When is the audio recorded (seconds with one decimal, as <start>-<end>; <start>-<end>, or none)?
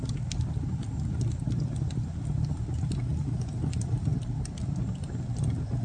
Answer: 0.0-5.8